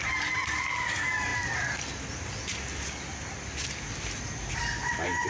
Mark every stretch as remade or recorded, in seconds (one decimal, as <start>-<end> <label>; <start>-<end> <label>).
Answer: 0.0-1.3 remade; 1.3-4.5 recorded; 4.5-5.3 remade